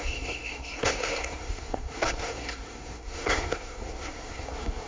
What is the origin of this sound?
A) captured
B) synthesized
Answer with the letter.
B